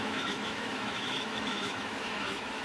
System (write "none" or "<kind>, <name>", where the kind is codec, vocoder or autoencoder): autoencoder, DAC-VAE